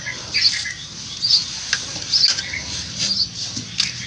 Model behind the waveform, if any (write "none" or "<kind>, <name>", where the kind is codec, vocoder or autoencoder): none